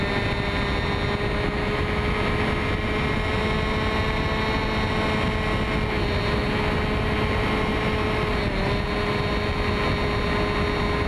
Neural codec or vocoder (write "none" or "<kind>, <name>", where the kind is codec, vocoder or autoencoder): none